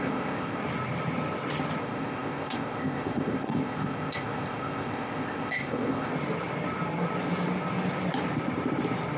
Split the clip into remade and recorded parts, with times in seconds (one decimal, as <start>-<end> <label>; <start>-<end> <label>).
0.0-0.6 remade; 0.6-1.8 recorded; 1.8-6.1 remade; 6.1-9.2 recorded